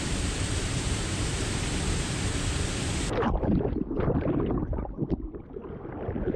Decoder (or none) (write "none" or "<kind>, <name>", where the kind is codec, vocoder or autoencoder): vocoder, BigVGAN v2